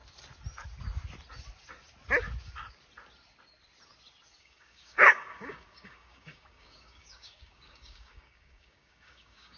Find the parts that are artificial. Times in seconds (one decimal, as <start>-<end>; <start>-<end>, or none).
4.4-9.6